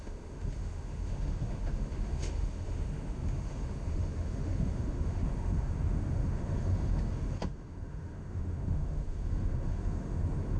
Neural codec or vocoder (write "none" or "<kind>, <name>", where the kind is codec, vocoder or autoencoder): autoencoder, DAC-VAE